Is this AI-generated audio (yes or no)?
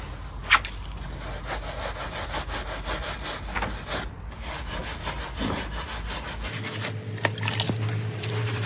no